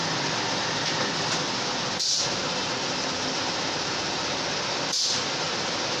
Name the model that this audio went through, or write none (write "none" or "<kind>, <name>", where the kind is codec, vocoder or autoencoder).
none